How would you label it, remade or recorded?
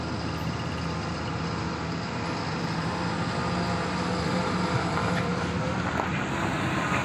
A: recorded